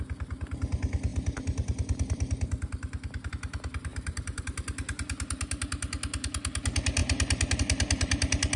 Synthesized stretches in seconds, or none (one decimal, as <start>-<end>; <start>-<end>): 3.9-4.4